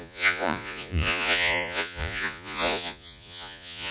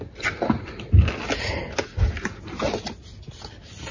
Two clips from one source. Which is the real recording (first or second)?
second